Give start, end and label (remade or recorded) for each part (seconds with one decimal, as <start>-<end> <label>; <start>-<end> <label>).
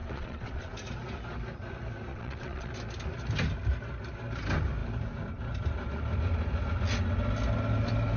0.0-0.7 remade; 0.7-2.1 recorded; 2.1-2.7 remade; 2.7-8.2 recorded